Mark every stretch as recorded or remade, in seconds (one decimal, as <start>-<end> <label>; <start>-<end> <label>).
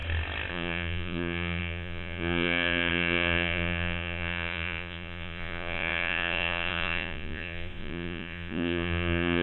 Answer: 0.0-0.5 recorded; 0.5-9.4 remade